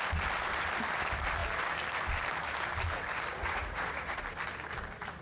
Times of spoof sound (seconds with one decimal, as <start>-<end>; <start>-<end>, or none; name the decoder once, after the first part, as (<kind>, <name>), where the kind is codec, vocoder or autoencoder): 3.4-4.2 (vocoder, Vocos)